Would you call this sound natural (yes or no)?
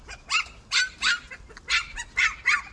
yes